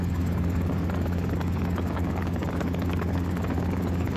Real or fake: fake